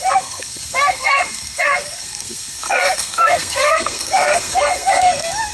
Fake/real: fake